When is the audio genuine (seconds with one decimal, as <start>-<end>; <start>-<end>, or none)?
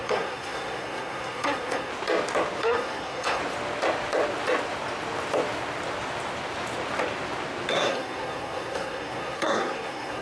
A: 1.9-2.6; 3.4-7.7